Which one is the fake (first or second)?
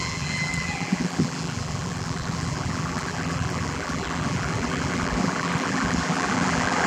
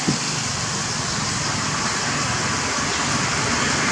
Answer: first